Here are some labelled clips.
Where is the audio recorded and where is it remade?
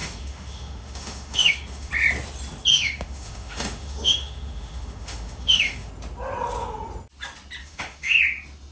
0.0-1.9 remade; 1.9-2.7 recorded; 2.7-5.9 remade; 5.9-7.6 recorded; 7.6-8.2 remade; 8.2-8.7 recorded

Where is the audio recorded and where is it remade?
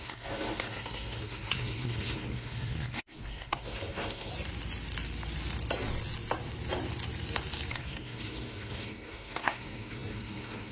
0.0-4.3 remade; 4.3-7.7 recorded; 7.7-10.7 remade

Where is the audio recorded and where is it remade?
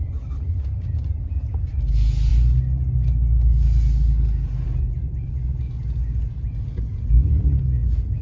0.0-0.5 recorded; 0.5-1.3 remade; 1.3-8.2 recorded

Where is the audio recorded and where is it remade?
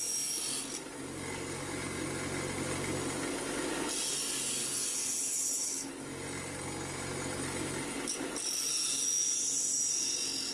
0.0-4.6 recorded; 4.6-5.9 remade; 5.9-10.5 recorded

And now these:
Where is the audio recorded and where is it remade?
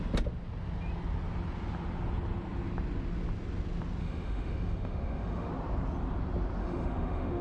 0.0-4.0 recorded; 4.0-5.5 remade; 5.5-6.6 recorded; 6.6-7.4 remade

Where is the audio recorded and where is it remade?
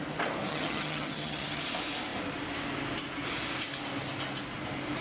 0.0-0.5 recorded; 0.5-1.6 remade; 1.6-5.0 recorded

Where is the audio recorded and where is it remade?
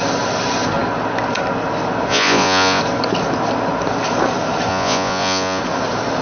0.0-2.1 recorded; 2.1-2.8 remade; 2.8-4.7 recorded; 4.7-5.6 remade; 5.6-6.2 recorded